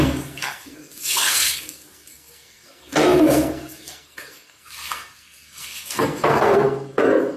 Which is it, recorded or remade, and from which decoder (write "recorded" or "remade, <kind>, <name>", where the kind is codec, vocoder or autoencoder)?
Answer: remade, codec, SNAC